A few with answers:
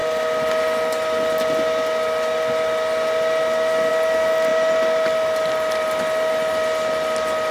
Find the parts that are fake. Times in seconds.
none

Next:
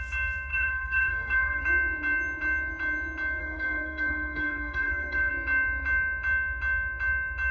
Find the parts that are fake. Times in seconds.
0.5-1.6 (codec, SNAC); 3.4-5.3

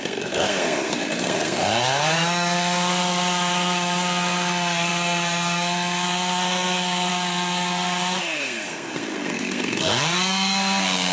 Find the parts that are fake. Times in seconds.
0.0-11.1 (codec, SNAC)